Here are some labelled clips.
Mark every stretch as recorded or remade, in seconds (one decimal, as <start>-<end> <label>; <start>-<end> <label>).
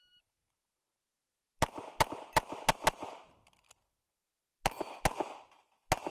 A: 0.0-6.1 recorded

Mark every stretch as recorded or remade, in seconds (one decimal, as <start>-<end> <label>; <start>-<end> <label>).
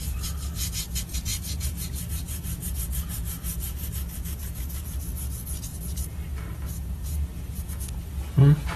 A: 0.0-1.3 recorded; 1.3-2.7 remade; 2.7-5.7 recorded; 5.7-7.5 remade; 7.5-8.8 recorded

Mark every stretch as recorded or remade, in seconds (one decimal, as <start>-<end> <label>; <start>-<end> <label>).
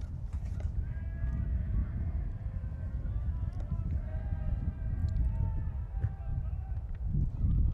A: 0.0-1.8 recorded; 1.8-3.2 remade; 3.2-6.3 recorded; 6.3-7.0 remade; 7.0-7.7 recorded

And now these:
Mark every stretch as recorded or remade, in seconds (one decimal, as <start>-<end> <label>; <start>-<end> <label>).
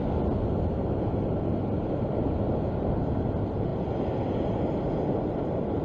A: 0.0-5.8 recorded